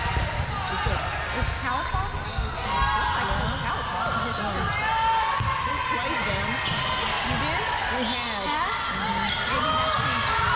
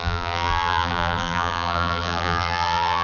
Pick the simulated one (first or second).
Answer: second